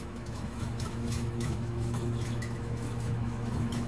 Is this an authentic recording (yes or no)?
no